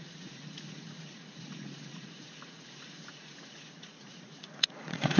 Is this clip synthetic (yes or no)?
yes